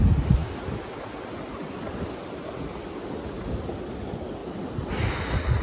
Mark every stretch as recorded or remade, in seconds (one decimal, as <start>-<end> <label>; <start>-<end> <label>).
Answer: 0.0-5.6 recorded